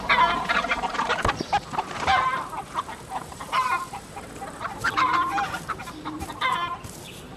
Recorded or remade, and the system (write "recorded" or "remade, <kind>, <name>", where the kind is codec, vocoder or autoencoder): remade, vocoder, BigVGAN v2